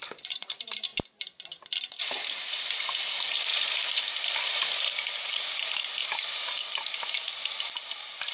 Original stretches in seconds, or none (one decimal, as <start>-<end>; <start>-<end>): 0.9-2.4